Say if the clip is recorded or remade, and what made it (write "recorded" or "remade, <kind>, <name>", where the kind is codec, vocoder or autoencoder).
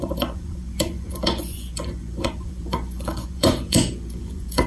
remade, vocoder, Vocos